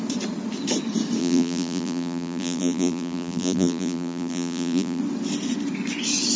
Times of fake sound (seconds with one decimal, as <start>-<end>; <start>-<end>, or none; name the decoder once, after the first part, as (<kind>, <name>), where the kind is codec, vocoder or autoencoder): 1.2-5.0 (vocoder, BigVGAN v2)

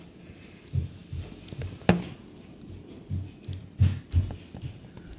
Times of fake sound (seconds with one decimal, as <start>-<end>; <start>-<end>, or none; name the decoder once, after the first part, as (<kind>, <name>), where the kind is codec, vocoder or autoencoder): none

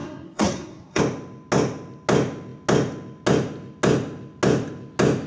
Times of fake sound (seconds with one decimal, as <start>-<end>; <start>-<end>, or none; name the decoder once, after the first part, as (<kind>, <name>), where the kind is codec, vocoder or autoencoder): 0.0-1.0 (codec, SNAC)

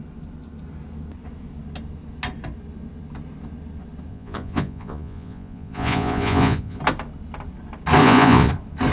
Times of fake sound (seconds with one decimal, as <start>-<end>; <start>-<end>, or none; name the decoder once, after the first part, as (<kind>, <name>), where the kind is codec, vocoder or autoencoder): 4.1-6.8 (vocoder, Vocos); 8.0-8.5

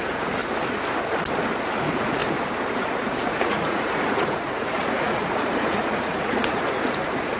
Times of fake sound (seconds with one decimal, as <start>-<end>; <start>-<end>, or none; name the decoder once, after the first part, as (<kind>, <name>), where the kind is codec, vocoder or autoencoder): 0.0-0.4 (vocoder, Vocos); 1.8-2.2; 2.7-7.4

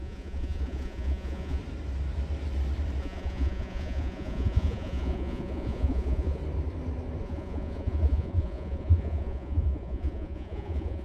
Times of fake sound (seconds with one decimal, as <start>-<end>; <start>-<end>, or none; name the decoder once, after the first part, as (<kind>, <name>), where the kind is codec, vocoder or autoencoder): 0.0-1.6 (vocoder, Vocos); 3.0-6.4; 7.2-11.0